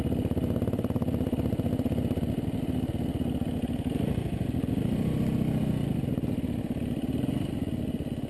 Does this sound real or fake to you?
real